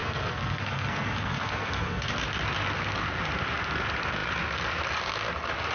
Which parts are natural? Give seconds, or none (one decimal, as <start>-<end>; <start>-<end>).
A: 2.1-5.7